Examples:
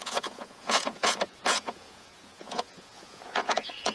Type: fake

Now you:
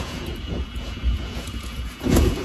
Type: fake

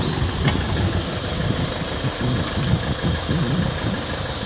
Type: real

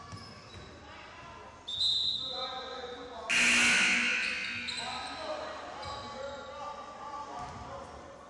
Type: real